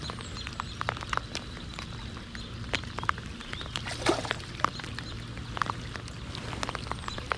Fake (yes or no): no